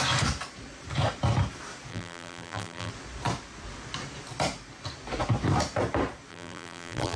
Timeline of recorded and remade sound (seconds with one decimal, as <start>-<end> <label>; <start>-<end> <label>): 0.0-1.9 recorded; 1.9-2.9 remade; 2.9-6.3 recorded; 6.3-7.2 remade